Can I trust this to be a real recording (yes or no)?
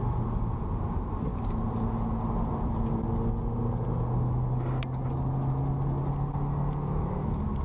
yes